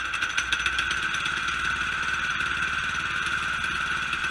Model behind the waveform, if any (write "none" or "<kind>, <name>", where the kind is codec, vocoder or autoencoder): none